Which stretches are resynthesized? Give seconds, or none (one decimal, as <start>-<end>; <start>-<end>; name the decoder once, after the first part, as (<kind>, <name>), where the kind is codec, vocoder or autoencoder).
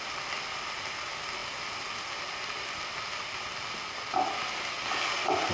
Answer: none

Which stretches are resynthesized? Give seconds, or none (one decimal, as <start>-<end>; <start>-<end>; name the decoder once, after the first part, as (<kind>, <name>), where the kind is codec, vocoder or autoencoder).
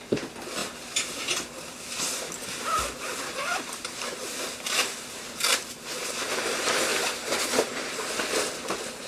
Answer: none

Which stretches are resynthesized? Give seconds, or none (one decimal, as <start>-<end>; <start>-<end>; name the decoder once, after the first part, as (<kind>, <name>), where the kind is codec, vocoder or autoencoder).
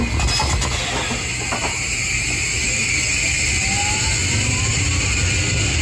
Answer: 1.6-2.6 (vocoder, BigVGAN v2); 4.2-4.7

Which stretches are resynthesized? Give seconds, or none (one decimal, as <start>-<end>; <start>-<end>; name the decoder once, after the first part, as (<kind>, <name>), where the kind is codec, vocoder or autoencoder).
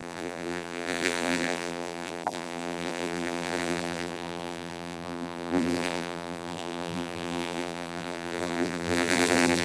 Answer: 0.0-9.6 (vocoder, BigVGAN v2)